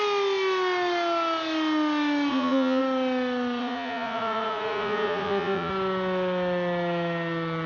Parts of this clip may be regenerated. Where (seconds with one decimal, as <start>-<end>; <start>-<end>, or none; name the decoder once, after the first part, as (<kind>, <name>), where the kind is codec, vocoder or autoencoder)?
2.3-2.8 (vocoder, Vocos); 3.6-5.7